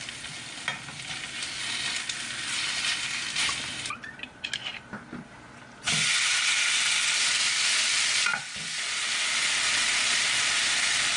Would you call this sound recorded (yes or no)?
yes